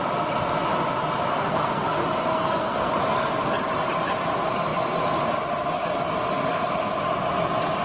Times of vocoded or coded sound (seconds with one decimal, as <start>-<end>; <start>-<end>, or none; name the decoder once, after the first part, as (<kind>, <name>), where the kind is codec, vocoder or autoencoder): 1.3-1.9 (codec, SNAC); 2.3-2.9